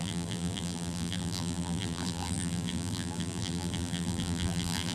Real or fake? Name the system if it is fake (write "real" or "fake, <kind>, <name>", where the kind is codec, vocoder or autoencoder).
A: fake, vocoder, BigVGAN v2